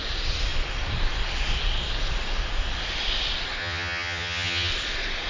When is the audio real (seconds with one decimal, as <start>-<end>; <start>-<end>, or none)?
0.0-3.6; 4.7-5.3